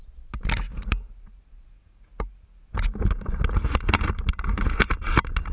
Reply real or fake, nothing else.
real